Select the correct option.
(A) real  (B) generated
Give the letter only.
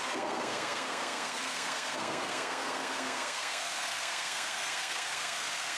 B